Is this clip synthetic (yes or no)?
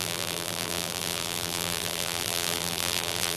yes